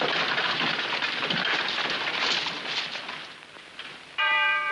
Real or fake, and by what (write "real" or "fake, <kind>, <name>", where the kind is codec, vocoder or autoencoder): fake, vocoder, BigVGAN v2